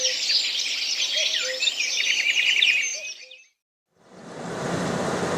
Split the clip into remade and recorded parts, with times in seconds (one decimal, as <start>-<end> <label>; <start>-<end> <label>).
0.0-5.4 recorded